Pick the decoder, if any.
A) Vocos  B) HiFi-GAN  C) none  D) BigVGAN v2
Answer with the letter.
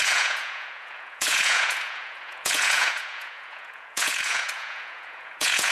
A